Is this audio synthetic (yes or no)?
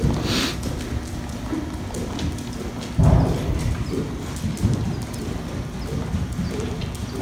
no